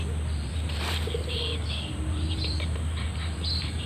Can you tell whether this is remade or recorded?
remade